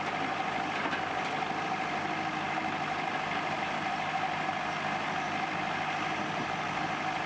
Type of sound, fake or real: real